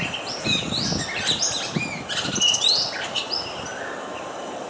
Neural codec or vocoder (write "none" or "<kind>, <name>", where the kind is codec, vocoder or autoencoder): none